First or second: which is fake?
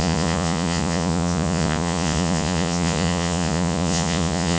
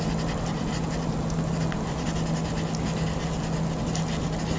first